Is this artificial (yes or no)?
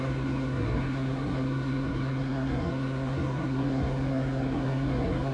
yes